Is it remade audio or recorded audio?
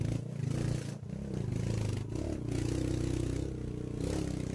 recorded